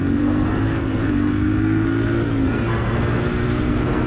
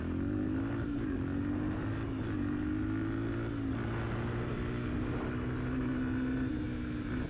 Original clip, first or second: second